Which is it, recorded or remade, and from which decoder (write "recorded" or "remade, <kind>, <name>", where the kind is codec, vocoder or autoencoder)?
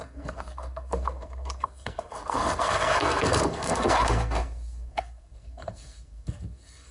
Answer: remade, codec, SNAC